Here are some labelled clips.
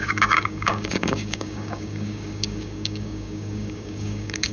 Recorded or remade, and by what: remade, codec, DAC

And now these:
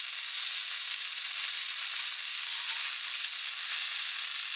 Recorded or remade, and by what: recorded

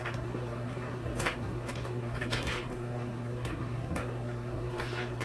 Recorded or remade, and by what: remade, codec, SNAC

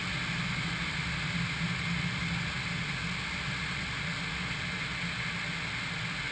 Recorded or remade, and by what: recorded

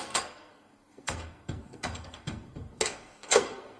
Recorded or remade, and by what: remade, codec, SNAC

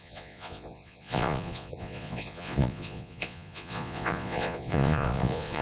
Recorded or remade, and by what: remade, vocoder, Vocos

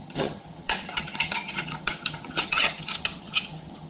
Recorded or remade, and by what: remade, vocoder, HiFi-GAN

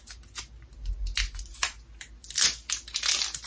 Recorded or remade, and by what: recorded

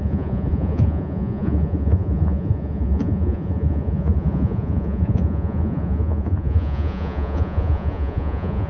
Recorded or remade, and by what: remade, vocoder, Vocos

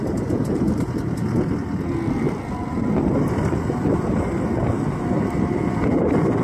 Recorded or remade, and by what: recorded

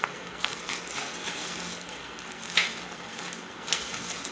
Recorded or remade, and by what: remade, codec, SNAC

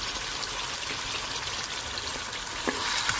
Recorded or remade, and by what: recorded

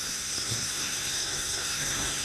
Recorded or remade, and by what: remade, codec, SNAC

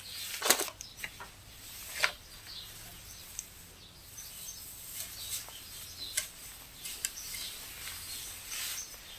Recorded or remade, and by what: recorded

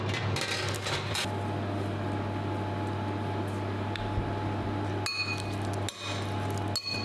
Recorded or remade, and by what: recorded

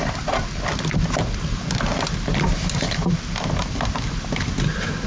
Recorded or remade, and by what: recorded